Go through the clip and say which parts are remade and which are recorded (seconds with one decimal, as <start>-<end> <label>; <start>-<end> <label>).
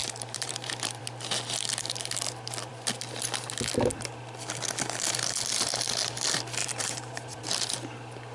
0.0-1.0 remade; 1.0-6.6 recorded; 6.6-7.4 remade; 7.4-8.3 recorded